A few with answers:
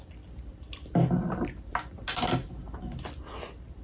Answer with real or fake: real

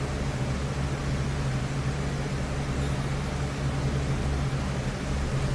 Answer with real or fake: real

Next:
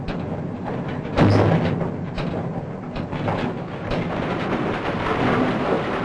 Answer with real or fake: real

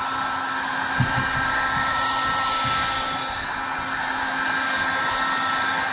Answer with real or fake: real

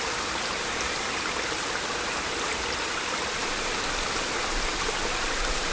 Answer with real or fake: real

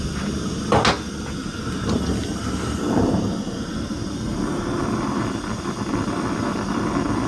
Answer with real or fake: real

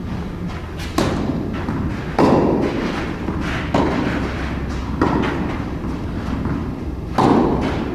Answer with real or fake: real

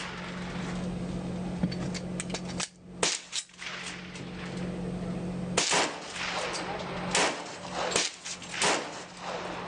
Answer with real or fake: real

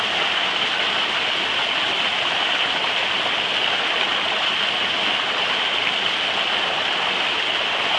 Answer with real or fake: real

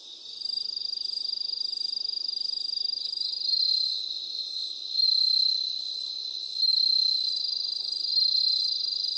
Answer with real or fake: fake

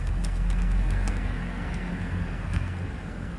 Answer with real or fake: fake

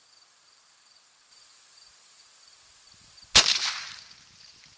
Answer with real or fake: real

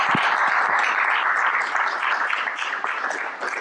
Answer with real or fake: real